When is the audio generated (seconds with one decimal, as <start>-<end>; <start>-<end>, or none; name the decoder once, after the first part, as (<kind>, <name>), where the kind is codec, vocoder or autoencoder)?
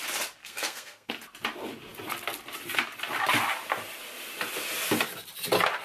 0.4-1.1 (codec, SNAC)